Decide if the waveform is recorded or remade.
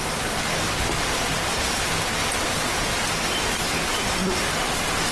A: recorded